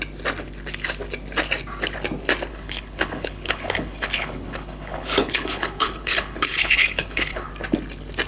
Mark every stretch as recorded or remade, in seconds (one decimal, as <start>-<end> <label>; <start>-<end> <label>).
0.0-2.5 recorded; 2.5-7.5 remade; 7.5-8.3 recorded